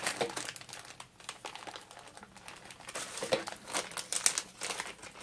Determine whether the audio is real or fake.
real